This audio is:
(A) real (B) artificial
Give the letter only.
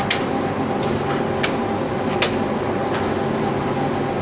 A